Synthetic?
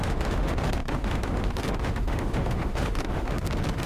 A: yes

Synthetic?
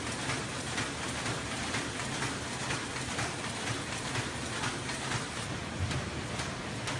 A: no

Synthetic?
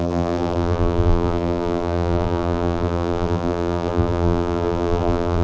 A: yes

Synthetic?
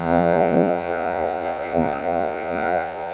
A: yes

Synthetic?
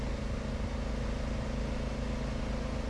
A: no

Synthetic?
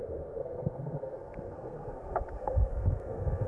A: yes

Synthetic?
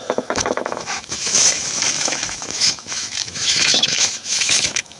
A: yes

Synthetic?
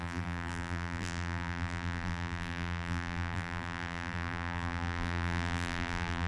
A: yes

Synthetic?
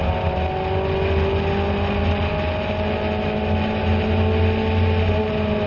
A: no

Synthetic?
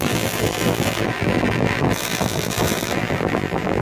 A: yes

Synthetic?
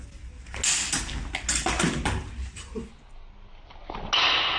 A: no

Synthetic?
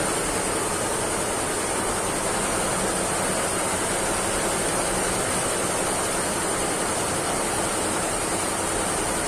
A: no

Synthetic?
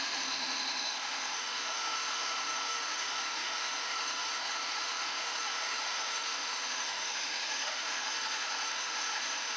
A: yes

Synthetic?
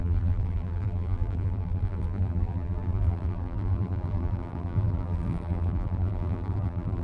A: yes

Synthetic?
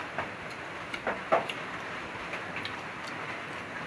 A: no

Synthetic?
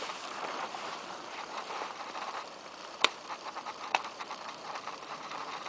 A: yes